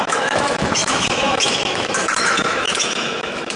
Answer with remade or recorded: remade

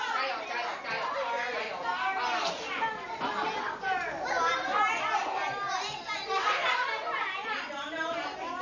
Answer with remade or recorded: recorded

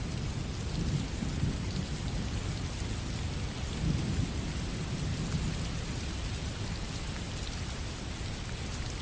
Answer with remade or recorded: recorded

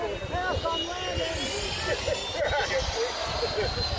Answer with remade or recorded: recorded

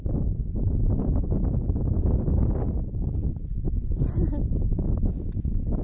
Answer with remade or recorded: recorded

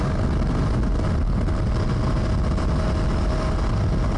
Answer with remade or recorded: recorded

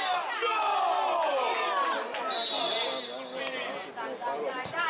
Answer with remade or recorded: recorded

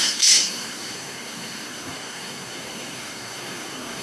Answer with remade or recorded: remade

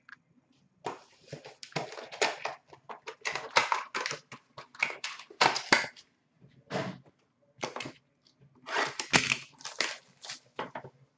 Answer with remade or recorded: recorded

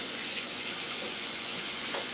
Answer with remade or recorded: remade